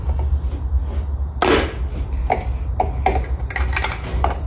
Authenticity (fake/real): real